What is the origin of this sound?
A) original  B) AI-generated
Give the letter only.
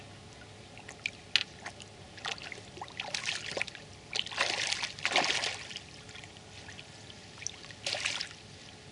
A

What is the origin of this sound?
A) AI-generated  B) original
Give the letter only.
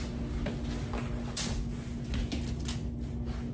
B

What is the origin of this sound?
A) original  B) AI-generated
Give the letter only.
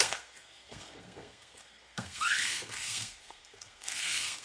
B